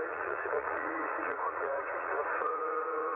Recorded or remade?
remade